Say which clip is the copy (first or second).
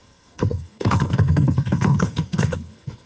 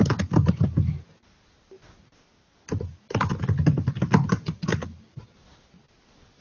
first